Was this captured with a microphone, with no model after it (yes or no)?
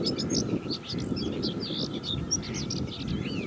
yes